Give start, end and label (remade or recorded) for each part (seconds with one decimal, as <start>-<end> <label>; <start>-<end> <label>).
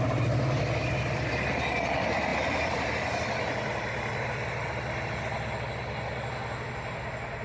0.0-7.4 recorded